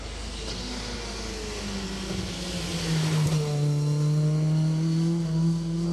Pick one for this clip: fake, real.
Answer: real